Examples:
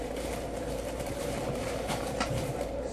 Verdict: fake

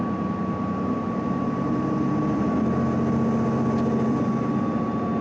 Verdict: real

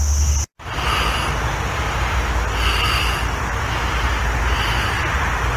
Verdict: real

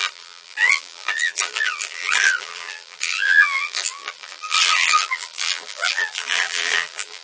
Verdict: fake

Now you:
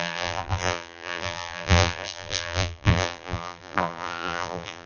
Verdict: fake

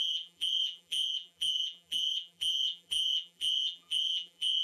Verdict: fake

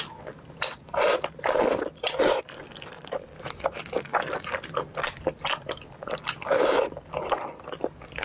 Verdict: real